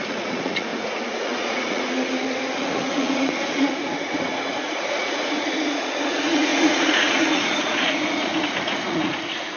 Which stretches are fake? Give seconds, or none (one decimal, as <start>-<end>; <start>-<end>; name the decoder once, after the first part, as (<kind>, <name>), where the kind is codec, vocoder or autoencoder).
0.0-9.6 (vocoder, Vocos)